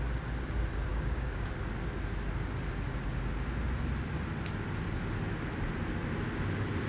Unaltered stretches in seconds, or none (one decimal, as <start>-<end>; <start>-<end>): 0.0-0.9; 1.5-6.9